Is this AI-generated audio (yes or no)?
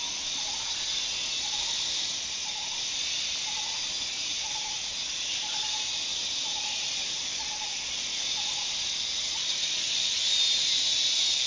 no